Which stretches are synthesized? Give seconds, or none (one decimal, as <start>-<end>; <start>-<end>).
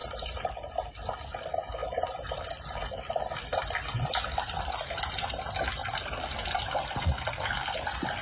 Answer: 0.0-0.5; 1.8-4.6; 5.8-8.2